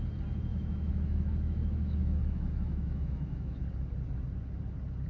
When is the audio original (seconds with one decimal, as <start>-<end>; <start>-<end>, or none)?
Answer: 0.0-0.5; 3.6-5.1